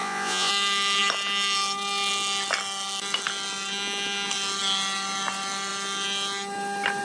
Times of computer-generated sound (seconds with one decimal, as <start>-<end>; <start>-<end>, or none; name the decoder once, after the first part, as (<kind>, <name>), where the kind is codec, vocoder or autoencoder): 0.0-0.5 (vocoder, Vocos)